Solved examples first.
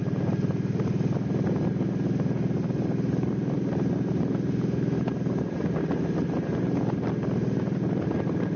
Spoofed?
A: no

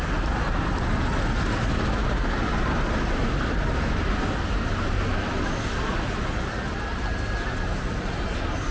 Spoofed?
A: no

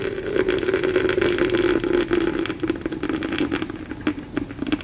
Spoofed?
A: no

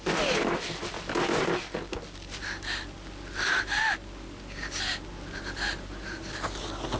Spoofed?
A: no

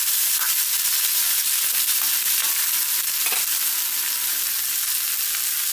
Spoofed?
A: no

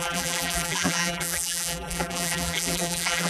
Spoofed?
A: yes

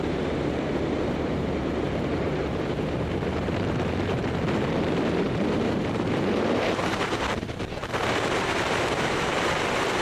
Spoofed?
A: yes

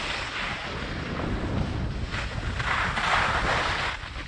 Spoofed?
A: no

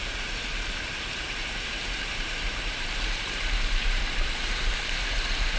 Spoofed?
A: yes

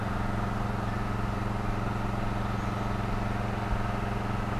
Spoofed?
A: no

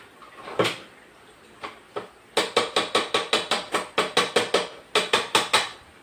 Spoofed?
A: no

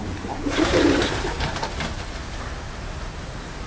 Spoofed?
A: yes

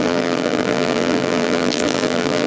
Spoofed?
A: yes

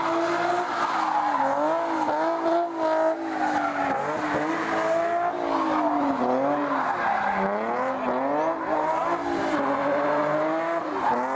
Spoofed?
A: no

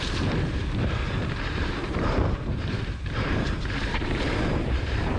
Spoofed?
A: yes